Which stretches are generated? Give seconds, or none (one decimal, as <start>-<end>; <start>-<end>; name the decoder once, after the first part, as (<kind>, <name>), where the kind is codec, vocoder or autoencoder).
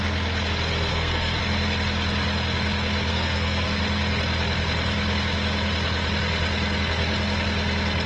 0.9-1.4 (codec, SNAC); 3.1-3.8